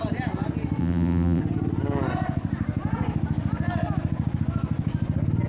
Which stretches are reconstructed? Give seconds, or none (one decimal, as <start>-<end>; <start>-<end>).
0.8-1.4